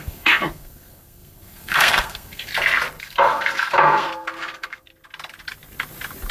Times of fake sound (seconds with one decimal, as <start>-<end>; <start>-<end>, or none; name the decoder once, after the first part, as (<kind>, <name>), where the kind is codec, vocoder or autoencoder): 0.0-2.5 (codec, SNAC); 3.0-4.9